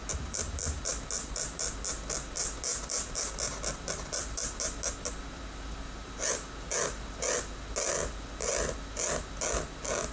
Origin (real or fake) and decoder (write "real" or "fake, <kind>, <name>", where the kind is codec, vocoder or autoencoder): real